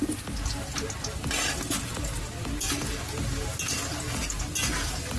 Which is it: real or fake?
real